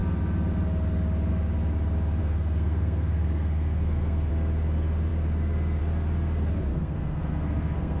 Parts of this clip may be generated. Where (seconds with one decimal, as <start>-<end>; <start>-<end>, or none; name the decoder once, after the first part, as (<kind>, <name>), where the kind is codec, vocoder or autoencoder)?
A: 2.2-4.3 (codec, SNAC); 6.7-8.0